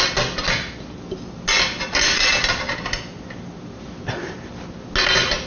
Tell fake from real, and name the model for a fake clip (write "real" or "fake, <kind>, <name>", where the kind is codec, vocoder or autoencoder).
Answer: real